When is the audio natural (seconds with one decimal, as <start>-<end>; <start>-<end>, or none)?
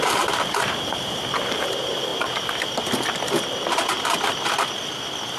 2.1-5.4